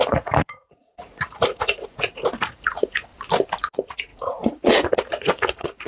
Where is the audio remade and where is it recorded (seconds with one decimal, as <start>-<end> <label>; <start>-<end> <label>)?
0.0-3.1 remade; 3.1-3.6 recorded; 3.6-5.9 remade